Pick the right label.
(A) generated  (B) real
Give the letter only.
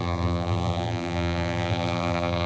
A